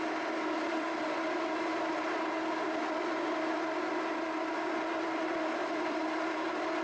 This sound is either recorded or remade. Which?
remade